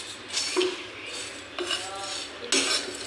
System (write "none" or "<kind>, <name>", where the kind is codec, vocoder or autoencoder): none